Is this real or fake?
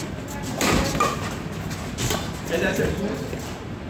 real